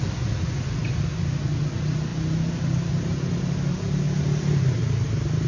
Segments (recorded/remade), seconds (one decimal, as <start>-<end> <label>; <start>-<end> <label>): 0.0-5.5 recorded